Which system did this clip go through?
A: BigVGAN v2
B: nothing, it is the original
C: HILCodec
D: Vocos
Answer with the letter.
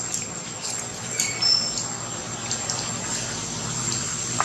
B